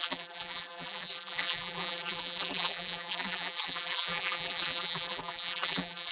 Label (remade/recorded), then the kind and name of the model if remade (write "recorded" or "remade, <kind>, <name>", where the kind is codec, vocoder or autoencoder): remade, vocoder, BigVGAN v2